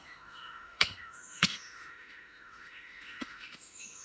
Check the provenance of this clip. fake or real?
fake